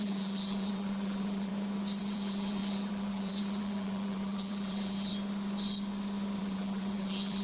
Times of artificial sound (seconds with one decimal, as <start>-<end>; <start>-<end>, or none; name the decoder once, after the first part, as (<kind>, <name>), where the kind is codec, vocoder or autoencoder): 0.0-1.5 (vocoder, BigVGAN v2); 2.0-5.1; 6.4-7.4